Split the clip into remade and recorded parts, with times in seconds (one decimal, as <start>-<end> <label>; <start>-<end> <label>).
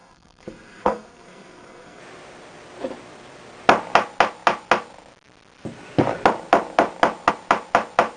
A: 0.0-2.0 remade; 2.0-8.2 recorded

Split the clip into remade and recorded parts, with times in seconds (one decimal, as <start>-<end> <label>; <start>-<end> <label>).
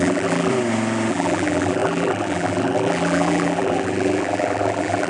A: 0.0-0.5 remade; 0.5-1.1 recorded; 1.1-5.1 remade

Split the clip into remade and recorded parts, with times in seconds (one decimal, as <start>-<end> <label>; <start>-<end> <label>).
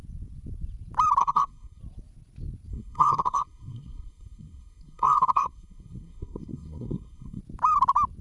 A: 0.0-1.2 recorded; 1.2-1.8 remade; 1.8-2.7 recorded; 2.7-7.4 remade; 7.4-8.2 recorded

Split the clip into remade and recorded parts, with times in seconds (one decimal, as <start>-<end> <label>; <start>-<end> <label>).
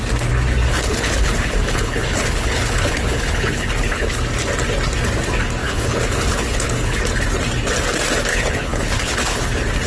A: 0.0-0.7 recorded; 0.7-4.2 remade; 4.2-5.6 recorded; 5.6-7.0 remade; 7.0-8.3 recorded; 8.3-9.4 remade; 9.4-9.9 recorded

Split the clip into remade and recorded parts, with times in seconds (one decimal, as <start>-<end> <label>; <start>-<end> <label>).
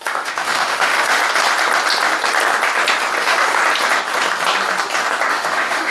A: 0.0-1.2 remade; 1.2-3.2 recorded; 3.2-3.6 remade; 3.6-5.3 recorded; 5.3-5.9 remade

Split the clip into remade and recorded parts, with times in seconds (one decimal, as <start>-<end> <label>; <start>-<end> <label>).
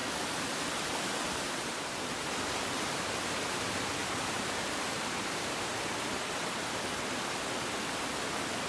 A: 0.0-4.0 recorded; 4.0-5.7 remade; 5.7-8.7 recorded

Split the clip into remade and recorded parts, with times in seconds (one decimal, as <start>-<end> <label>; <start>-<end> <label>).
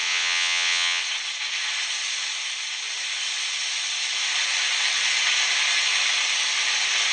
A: 0.0-1.0 remade; 1.0-7.1 recorded